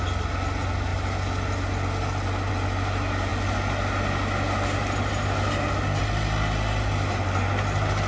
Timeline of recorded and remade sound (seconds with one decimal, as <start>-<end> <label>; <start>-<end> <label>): 0.0-8.1 recorded